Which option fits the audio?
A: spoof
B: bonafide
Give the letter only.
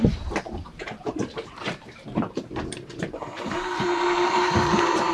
A